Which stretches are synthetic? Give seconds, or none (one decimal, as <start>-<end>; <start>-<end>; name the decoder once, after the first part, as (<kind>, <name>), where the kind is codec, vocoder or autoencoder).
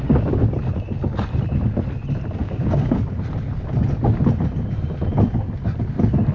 2.4-3.0 (codec, DAC)